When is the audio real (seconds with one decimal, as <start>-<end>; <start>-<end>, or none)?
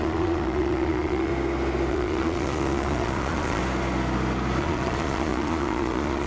1.3-1.9; 3.6-4.6